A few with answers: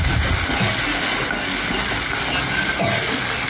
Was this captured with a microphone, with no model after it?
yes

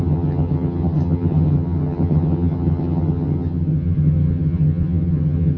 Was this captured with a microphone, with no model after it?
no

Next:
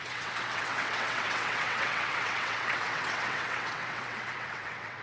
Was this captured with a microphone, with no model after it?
no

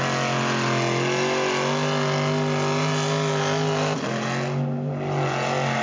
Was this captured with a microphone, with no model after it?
yes